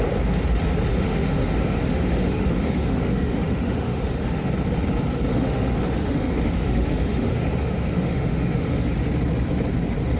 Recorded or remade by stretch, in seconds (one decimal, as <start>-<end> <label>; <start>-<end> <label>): 0.0-0.9 recorded; 0.9-4.5 remade; 4.5-5.3 recorded; 5.3-8.9 remade; 8.9-10.2 recorded

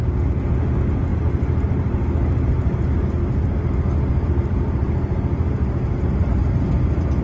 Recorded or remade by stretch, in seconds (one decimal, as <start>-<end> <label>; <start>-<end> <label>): 0.0-7.2 recorded

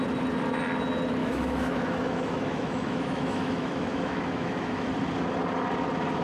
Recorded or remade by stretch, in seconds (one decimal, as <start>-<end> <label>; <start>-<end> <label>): 0.0-1.2 recorded; 1.2-4.9 remade; 4.9-6.2 recorded

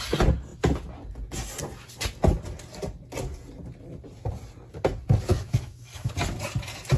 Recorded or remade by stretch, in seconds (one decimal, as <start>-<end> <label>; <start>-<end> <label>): 0.0-5.3 recorded; 5.3-6.1 remade; 6.1-7.0 recorded